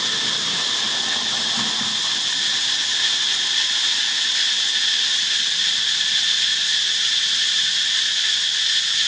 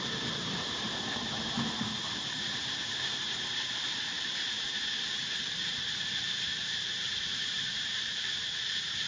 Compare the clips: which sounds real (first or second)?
first